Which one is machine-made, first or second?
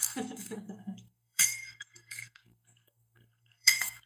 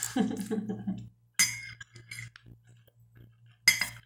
first